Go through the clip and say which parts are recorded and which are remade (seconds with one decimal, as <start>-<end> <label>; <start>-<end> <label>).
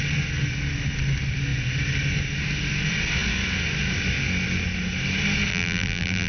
0.0-5.5 recorded; 5.5-6.3 remade